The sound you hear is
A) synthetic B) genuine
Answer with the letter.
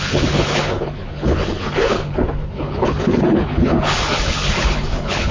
A